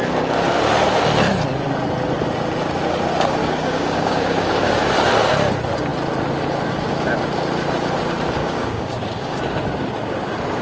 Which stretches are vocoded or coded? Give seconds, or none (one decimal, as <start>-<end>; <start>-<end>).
3.4-4.9; 8.4-9.4